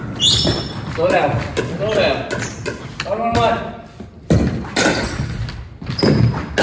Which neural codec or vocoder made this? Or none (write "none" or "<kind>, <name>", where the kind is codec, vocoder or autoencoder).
none